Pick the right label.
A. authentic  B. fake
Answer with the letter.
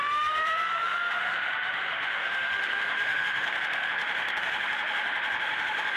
B